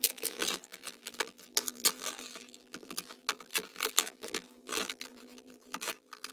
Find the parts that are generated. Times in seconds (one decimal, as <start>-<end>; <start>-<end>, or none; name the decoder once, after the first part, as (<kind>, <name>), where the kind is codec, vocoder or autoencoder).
0.0-6.3 (vocoder, BigVGAN v2)